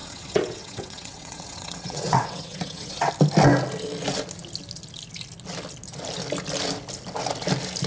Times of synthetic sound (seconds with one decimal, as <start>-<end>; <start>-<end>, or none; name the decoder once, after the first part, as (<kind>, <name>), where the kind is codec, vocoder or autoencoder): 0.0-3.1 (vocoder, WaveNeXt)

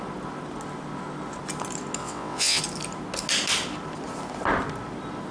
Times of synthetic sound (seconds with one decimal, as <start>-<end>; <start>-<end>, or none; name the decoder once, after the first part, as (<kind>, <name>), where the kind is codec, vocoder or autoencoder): 2.0-2.6 (vocoder, WaveNeXt)

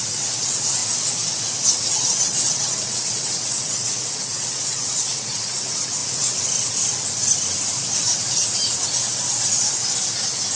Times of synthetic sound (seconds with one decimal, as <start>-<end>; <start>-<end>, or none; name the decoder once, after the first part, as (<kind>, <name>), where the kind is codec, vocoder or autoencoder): 0.0-0.8 (vocoder, WaveNeXt); 1.9-6.0

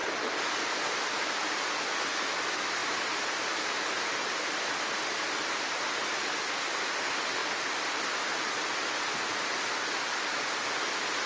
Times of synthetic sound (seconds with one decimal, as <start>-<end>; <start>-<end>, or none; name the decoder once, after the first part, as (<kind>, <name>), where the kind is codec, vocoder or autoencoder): none

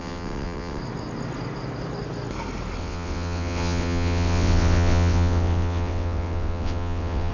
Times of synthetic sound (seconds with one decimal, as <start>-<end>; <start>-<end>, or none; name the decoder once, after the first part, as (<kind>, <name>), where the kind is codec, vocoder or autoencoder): 0.0-0.8 (vocoder, WaveNeXt); 2.8-7.3

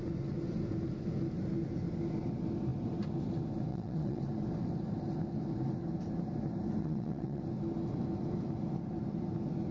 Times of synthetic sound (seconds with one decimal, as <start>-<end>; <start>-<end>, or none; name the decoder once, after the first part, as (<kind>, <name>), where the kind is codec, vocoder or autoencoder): 3.7-4.2 (vocoder, WaveNeXt); 6.8-7.4